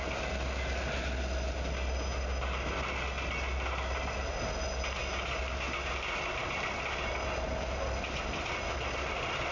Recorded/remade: recorded